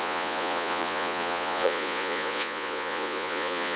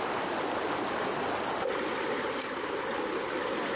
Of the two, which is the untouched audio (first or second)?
second